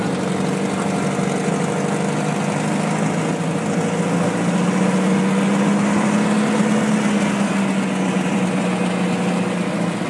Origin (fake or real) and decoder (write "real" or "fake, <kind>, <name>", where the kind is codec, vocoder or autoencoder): real